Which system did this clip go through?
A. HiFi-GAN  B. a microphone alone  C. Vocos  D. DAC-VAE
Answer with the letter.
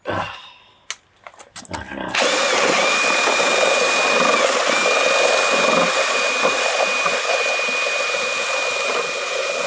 B